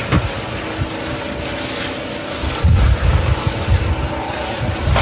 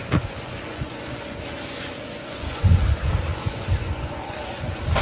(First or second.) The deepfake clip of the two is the second